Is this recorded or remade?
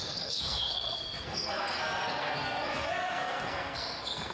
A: remade